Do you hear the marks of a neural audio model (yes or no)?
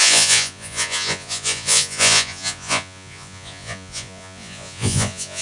yes